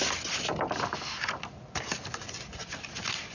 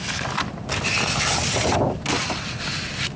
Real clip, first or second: first